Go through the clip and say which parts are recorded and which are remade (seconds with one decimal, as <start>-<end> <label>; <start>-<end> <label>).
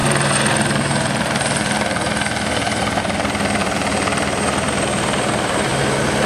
0.0-3.0 recorded; 3.0-5.7 remade; 5.7-6.3 recorded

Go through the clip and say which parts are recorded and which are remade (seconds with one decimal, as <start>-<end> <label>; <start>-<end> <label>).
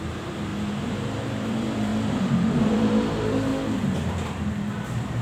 0.0-1.9 remade; 1.9-2.6 recorded; 2.6-3.5 remade; 3.5-4.1 recorded; 4.1-5.2 remade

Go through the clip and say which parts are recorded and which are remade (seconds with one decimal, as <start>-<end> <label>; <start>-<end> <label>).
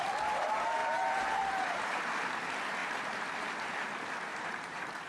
0.0-0.8 recorded; 0.8-2.1 remade; 2.1-4.3 recorded; 4.3-5.1 remade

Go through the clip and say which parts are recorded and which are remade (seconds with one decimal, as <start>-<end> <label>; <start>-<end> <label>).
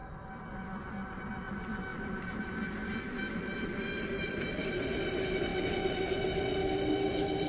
0.0-1.9 recorded; 1.9-4.8 remade; 4.8-7.5 recorded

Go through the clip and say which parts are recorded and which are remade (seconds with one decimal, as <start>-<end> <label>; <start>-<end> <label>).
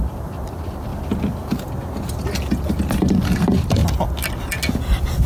0.0-0.9 remade; 0.9-3.1 recorded; 3.1-3.8 remade; 3.8-5.3 recorded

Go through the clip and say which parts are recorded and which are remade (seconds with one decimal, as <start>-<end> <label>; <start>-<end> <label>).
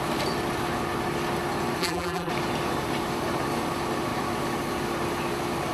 0.0-1.8 recorded; 1.8-2.3 remade; 2.3-5.7 recorded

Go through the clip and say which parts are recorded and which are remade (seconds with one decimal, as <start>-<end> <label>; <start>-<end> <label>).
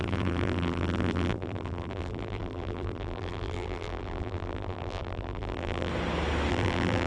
0.0-5.9 remade; 5.9-6.5 recorded; 6.5-7.1 remade